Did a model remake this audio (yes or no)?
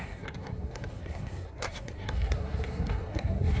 yes